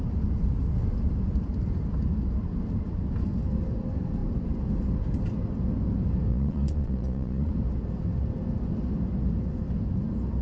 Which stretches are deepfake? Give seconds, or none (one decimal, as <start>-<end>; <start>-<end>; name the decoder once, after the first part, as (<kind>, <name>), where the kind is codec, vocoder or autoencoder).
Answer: 6.3-7.5 (vocoder, Vocos)

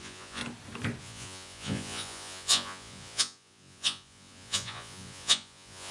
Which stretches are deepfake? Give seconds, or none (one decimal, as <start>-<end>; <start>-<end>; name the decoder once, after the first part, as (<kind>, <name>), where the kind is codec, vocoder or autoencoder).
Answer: 0.0-0.4 (vocoder, Vocos); 1.0-5.9

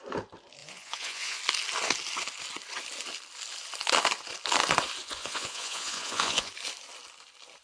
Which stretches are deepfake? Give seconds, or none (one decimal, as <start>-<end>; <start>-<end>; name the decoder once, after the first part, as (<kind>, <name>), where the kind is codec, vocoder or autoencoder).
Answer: 0.6-1.4 (vocoder, Vocos); 5.0-6.5

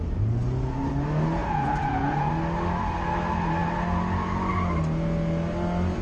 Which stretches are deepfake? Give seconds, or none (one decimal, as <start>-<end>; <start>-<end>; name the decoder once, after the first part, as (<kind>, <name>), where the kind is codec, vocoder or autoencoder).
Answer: 1.4-2.3 (vocoder, Vocos)